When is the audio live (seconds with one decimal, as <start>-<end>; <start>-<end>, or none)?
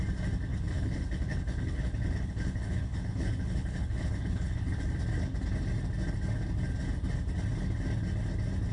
0.0-0.5; 4.8-8.7